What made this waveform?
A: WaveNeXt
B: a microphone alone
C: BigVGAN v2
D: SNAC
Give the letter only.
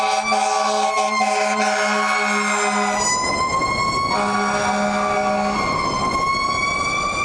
B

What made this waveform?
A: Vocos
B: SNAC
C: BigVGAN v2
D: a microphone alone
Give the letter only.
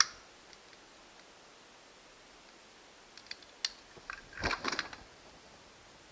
D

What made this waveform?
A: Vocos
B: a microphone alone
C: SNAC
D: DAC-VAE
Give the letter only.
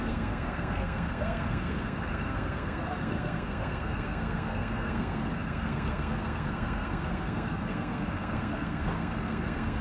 C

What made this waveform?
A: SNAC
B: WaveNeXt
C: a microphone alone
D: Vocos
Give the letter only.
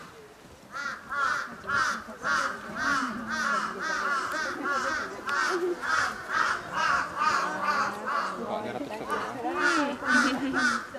C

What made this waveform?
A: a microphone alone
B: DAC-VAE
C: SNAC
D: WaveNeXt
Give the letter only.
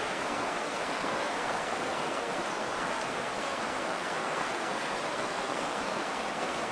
C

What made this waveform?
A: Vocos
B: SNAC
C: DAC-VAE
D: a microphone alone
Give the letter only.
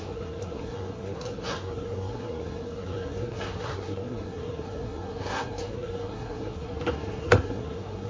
B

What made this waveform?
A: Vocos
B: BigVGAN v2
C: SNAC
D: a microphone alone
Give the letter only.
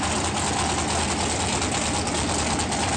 D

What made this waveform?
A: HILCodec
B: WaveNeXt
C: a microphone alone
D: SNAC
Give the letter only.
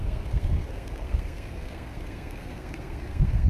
D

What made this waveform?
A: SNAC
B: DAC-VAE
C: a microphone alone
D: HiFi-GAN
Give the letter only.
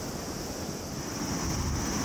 C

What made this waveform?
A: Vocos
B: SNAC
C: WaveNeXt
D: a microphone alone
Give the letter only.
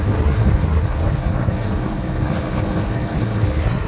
B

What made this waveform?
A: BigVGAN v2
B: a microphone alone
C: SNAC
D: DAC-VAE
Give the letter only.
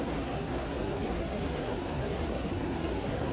C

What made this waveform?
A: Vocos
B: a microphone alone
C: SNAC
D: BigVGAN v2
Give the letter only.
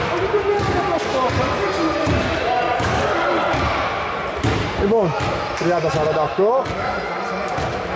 B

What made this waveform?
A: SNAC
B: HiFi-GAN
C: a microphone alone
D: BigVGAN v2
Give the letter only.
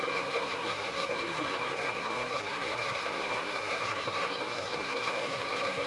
A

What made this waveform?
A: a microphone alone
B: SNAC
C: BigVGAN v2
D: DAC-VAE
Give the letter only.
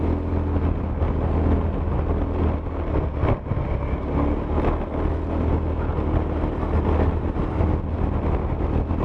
A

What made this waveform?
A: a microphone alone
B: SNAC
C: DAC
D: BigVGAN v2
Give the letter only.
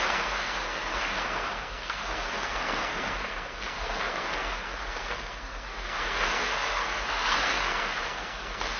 B